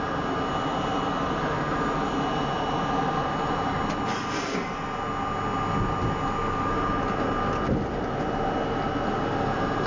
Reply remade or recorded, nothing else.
recorded